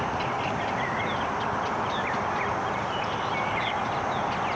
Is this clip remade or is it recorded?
recorded